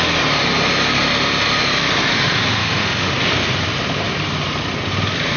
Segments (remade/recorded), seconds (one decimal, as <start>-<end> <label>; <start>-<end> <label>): 0.0-2.6 recorded; 2.6-3.1 remade; 3.1-5.4 recorded